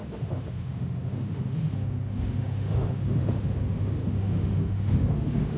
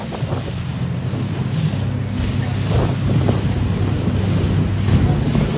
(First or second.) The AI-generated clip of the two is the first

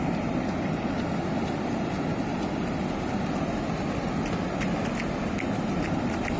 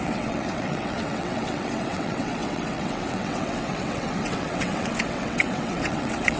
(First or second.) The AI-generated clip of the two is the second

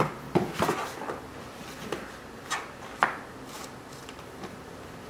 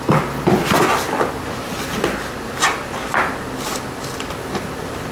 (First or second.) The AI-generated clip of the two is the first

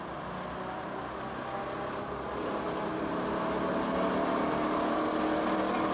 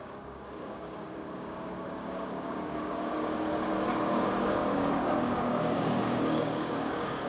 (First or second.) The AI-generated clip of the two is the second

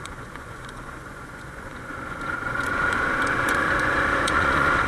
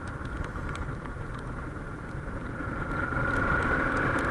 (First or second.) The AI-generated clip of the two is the first